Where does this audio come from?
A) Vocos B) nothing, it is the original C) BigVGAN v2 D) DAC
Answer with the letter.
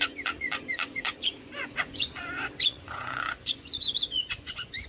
A